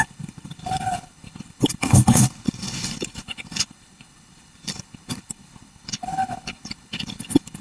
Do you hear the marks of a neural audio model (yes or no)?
yes